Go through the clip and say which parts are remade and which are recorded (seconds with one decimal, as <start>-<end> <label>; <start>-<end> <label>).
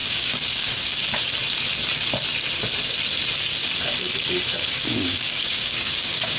0.0-1.0 remade; 1.0-4.7 recorded; 4.7-6.4 remade